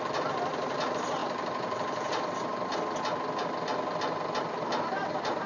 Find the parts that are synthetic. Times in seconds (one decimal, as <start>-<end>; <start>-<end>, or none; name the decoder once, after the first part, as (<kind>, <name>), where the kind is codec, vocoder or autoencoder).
0.0-2.7 (vocoder, BigVGAN v2); 4.4-5.5